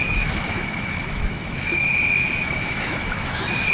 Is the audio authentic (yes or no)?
no